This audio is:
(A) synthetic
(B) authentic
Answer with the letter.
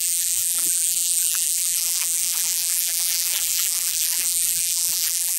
A